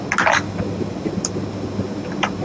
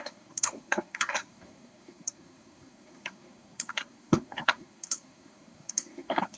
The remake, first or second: second